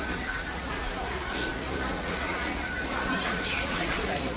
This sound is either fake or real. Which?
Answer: fake